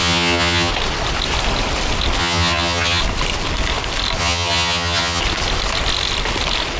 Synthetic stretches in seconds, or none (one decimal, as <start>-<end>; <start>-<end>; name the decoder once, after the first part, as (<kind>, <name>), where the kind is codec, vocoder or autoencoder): 0.0-0.7 (vocoder, HiFi-GAN); 2.2-3.0; 4.2-5.2